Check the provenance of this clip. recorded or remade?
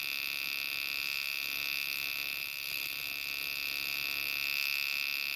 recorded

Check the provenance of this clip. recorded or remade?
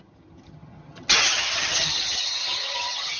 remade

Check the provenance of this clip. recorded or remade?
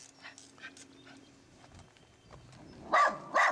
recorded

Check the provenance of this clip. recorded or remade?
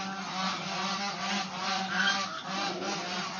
recorded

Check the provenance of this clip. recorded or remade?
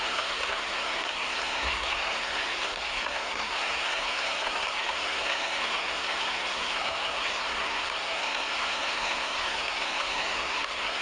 remade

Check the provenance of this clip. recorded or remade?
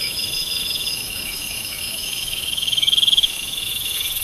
remade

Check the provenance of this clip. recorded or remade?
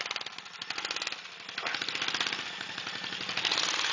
recorded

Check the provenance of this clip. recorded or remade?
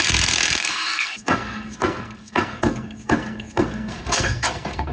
remade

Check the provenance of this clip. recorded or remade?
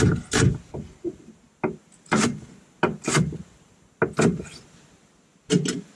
recorded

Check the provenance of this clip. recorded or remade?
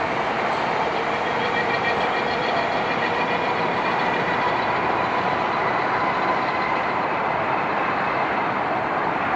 remade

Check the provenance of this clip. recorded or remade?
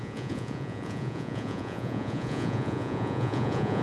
remade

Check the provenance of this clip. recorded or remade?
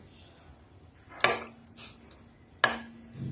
recorded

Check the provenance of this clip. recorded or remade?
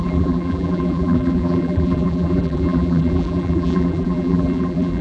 remade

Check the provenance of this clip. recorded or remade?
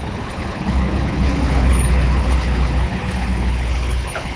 remade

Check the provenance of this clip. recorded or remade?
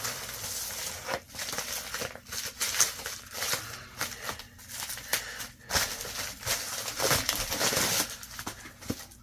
recorded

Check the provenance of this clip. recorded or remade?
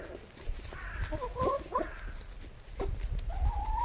recorded